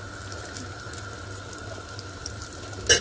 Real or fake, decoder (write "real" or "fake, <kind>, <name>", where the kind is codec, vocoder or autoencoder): real